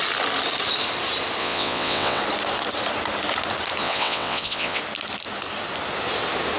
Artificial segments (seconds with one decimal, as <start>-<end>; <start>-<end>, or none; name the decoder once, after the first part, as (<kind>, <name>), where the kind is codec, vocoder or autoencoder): 1.4-2.2 (vocoder, WaveNeXt); 3.8-4.8